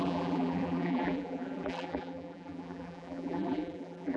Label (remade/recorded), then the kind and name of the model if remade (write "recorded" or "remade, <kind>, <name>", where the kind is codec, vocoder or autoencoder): remade, vocoder, BigVGAN v2